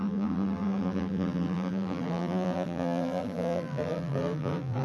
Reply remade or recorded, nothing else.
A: remade